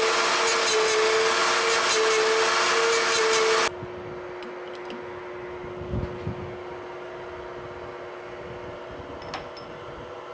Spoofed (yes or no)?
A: no